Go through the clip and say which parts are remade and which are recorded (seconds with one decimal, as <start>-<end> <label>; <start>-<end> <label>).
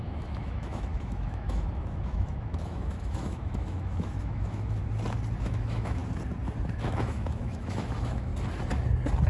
0.0-4.8 remade; 4.8-5.4 recorded; 5.4-6.0 remade; 6.0-6.7 recorded; 6.7-8.3 remade; 8.3-9.3 recorded